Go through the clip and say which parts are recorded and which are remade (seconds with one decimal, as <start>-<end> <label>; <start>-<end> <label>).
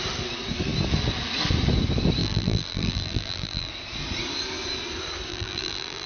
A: 0.0-2.2 recorded; 2.2-3.7 remade; 3.7-5.3 recorded; 5.3-6.1 remade